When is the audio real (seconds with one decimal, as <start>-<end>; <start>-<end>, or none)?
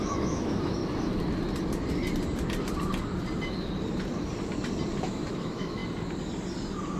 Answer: 0.8-5.0; 5.8-7.0